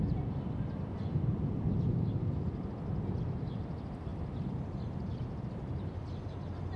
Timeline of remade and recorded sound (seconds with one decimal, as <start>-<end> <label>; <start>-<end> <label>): 0.0-1.3 recorded; 1.3-2.8 remade; 2.8-4.1 recorded; 4.1-6.0 remade; 6.0-6.8 recorded